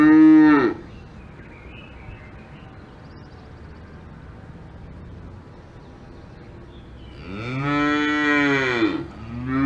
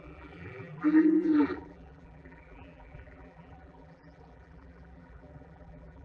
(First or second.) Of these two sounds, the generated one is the second